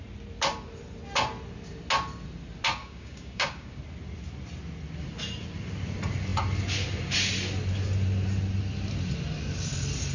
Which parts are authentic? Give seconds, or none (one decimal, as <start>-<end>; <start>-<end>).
0.0-2.8; 3.8-10.1